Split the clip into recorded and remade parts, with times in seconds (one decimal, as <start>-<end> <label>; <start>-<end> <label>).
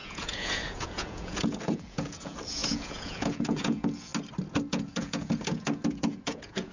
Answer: 0.0-4.1 remade; 4.1-4.7 recorded; 4.7-6.7 remade